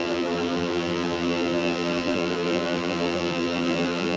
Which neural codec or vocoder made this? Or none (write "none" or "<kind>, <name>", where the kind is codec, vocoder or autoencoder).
vocoder, BigVGAN v2